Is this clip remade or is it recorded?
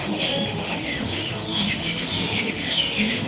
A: remade